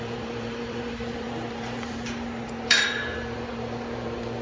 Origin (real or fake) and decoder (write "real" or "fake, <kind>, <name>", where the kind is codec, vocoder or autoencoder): fake, vocoder, BigVGAN v2